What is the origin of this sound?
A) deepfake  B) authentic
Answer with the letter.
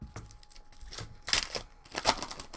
B